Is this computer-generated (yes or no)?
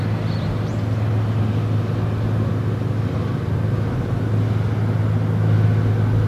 no